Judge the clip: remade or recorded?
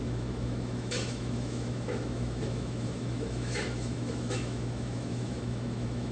remade